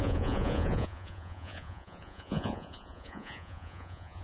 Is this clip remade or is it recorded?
remade